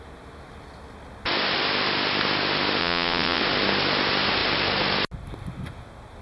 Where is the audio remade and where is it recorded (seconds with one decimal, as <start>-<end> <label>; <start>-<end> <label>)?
0.0-2.8 recorded; 2.8-3.4 remade; 3.4-6.2 recorded